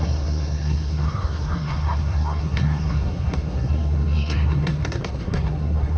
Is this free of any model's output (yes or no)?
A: no